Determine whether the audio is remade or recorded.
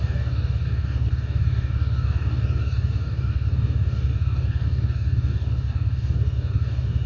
remade